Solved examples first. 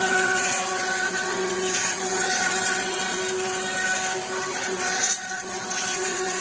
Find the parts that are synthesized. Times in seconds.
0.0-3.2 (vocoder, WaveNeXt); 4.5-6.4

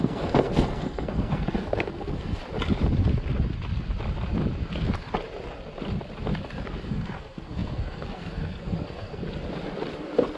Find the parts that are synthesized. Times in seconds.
0.0-2.4 (codec, SNAC); 6.8-9.2

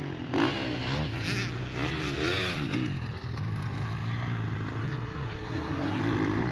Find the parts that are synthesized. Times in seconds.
4.8-6.0 (codec, SNAC)

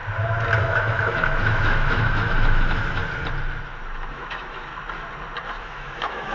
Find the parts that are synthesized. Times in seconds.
0.6-3.0 (autoencoder, DAC-VAE); 4.1-4.7; 5.6-6.3

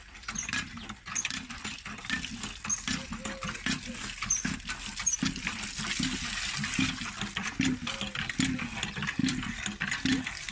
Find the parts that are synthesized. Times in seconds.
none

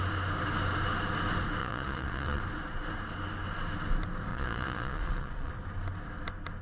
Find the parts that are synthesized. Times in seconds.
1.6-2.4 (vocoder, Vocos); 4.3-5.5

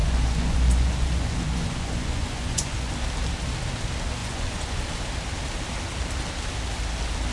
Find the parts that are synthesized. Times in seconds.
0.0-2.9 (vocoder, Vocos); 4.2-4.8